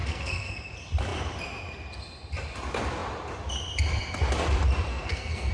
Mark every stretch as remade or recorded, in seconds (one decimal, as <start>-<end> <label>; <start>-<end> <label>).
0.0-0.6 remade; 0.6-4.9 recorded; 4.9-5.5 remade